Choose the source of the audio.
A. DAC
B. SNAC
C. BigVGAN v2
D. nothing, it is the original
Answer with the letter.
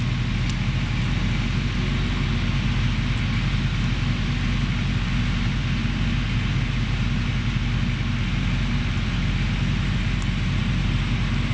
D